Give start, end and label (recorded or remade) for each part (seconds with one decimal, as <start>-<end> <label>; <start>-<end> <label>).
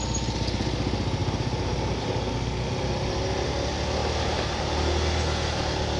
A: 0.0-6.0 recorded